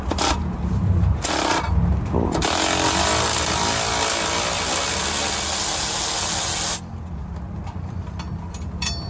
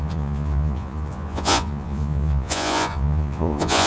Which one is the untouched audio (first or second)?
first